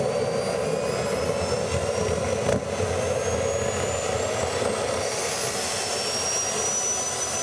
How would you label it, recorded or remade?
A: recorded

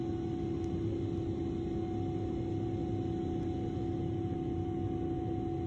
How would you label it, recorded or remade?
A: recorded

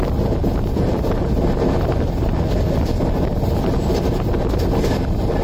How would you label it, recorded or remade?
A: recorded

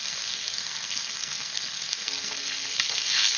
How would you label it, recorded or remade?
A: remade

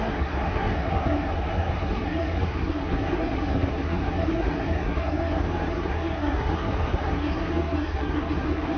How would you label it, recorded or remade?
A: remade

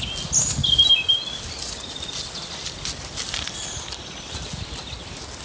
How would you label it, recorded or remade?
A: recorded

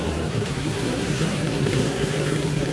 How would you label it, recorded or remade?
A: remade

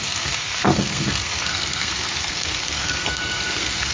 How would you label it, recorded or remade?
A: remade